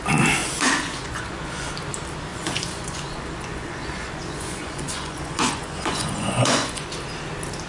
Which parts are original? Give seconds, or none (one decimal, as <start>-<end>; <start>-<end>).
0.0-0.4; 1.7-2.3; 6.9-7.7